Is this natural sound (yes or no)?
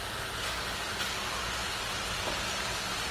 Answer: yes